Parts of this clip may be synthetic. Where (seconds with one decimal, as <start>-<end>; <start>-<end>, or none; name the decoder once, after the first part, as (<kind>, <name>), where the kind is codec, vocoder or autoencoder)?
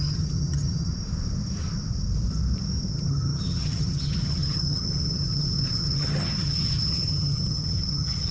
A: 0.0-0.9 (vocoder, HiFi-GAN); 2.9-8.3